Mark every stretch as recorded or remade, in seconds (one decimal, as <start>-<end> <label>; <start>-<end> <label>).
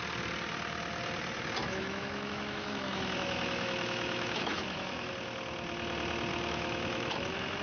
0.0-1.6 recorded; 1.6-5.1 remade; 5.1-6.3 recorded; 6.3-7.6 remade